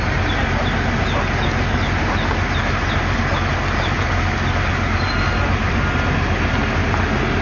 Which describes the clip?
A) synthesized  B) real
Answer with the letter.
B